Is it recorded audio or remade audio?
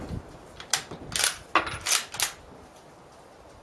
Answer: recorded